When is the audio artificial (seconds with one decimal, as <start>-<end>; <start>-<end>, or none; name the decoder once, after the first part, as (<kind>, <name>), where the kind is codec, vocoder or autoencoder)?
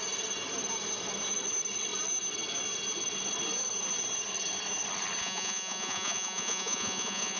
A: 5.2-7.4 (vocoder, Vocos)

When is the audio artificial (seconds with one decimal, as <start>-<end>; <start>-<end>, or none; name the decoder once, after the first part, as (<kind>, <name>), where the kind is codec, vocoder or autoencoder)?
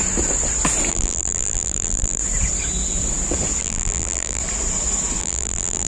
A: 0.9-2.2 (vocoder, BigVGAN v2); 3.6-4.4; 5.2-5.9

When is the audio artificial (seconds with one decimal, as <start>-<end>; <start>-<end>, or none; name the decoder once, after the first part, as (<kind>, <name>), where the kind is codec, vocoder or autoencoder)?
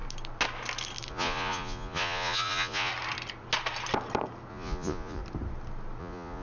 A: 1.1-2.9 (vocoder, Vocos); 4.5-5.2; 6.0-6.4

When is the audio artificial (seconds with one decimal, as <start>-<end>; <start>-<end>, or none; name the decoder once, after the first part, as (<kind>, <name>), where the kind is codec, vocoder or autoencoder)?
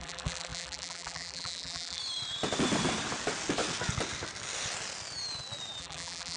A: 0.0-2.0 (vocoder, BigVGAN v2); 5.8-6.4